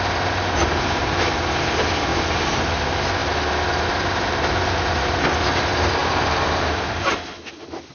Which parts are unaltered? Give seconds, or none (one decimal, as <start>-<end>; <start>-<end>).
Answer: 0.0-0.6; 1.1-2.1; 2.8-6.0; 7.1-7.9